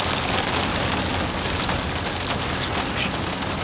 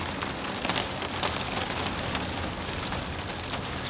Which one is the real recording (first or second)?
first